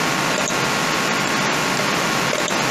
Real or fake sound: real